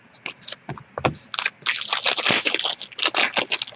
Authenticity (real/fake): real